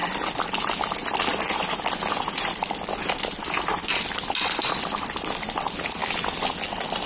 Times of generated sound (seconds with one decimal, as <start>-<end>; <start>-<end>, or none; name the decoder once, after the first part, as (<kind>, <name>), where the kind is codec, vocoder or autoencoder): 1.3-5.6 (vocoder, BigVGAN v2); 6.0-7.1

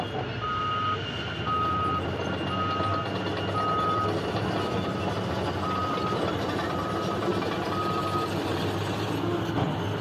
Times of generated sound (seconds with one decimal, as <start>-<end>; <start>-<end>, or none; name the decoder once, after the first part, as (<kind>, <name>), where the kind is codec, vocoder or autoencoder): 5.8-6.5 (vocoder, BigVGAN v2)

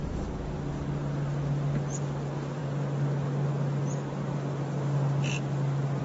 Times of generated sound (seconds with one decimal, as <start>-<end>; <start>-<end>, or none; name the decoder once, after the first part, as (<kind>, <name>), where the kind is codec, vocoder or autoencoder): none

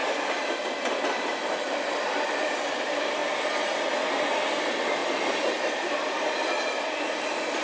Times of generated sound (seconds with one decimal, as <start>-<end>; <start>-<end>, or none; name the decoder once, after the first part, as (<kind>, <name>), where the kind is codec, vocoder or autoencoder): 5.0-6.1 (vocoder, BigVGAN v2)

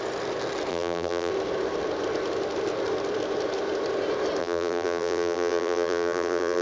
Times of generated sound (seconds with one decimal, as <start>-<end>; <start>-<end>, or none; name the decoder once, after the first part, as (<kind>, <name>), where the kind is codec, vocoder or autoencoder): 0.7-1.3 (vocoder, BigVGAN v2); 4.4-6.6